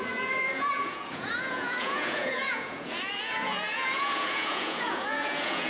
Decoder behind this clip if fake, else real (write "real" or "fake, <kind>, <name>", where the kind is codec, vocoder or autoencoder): fake, vocoder, Vocos